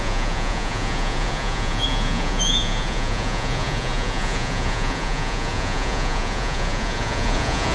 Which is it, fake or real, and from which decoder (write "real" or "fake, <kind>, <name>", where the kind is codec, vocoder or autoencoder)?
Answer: fake, vocoder, Vocos